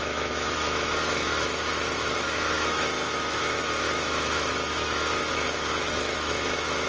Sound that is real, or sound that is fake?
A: fake